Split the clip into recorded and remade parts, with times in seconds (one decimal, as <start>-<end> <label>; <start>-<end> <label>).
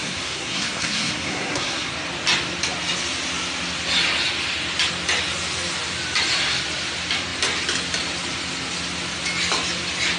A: 0.0-1.9 remade; 1.9-10.2 recorded